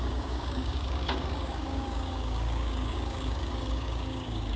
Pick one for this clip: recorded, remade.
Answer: remade